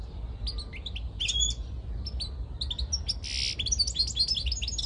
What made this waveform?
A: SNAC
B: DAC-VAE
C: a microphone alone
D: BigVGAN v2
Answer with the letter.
C